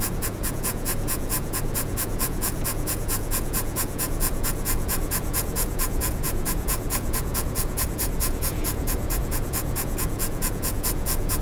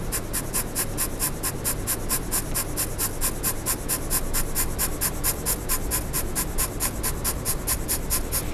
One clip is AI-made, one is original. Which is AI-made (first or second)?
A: first